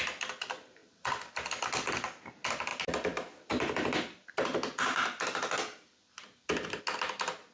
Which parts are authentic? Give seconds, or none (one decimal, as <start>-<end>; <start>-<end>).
0.0-0.8; 1.9-2.7; 6.8-7.5